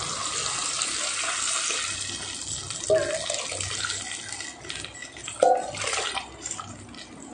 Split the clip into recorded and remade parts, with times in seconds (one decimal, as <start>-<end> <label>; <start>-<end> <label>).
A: 0.0-7.3 recorded